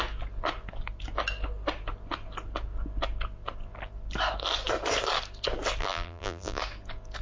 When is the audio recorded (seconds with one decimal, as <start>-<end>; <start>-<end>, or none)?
0.0-5.8; 6.6-7.2